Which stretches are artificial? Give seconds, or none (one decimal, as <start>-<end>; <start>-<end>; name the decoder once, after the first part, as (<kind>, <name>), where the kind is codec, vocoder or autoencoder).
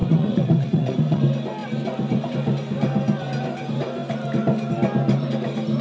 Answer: 0.0-1.2 (vocoder, Vocos)